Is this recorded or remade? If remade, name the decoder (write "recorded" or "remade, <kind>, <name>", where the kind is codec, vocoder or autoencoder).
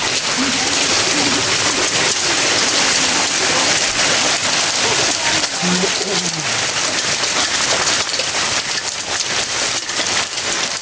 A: recorded